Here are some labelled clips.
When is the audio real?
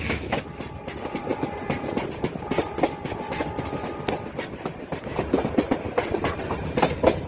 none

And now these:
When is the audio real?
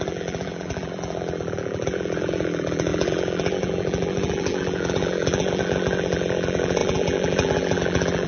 none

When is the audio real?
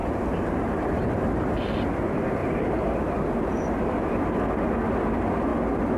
1.5-2.4; 4.4-6.0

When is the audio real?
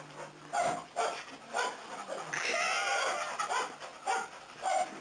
none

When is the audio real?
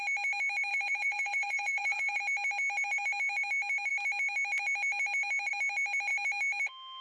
0.0-0.7; 2.2-7.0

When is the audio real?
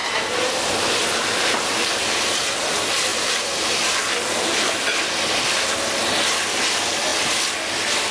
2.7-3.1; 5.0-8.1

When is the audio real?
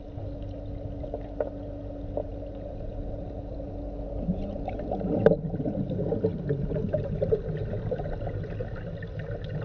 0.0-4.5; 5.7-6.3; 7.4-9.6